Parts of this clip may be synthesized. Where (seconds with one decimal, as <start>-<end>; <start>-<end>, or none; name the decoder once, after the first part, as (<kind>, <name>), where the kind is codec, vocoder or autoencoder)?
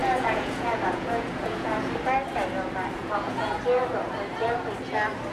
0.0-1.9 (vocoder, Vocos); 3.0-3.6